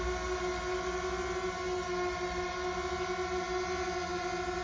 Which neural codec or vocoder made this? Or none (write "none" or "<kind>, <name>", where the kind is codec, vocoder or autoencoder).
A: none